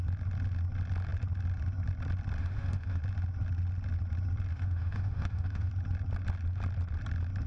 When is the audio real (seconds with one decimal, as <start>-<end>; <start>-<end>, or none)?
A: 0.0-2.4; 3.0-4.5; 5.7-7.5